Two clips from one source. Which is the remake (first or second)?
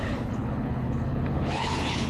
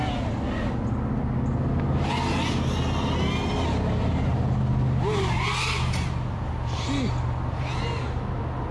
first